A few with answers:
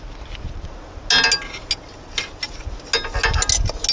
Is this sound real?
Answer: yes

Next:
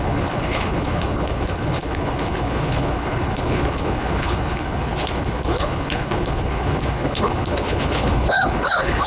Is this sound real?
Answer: no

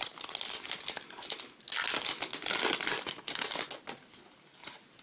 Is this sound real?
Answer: yes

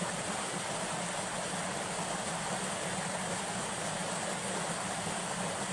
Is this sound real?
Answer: yes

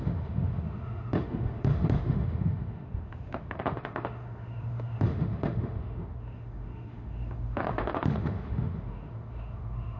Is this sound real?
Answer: no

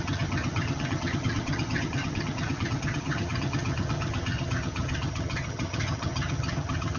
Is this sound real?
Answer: no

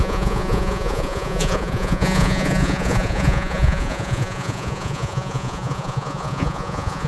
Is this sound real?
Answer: no